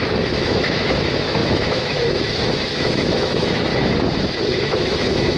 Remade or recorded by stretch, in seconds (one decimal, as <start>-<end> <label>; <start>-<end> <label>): 0.0-3.7 remade; 3.7-4.6 recorded; 4.6-5.4 remade